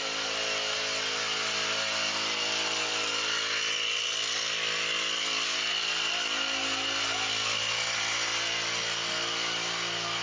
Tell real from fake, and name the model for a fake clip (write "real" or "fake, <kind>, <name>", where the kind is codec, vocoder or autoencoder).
real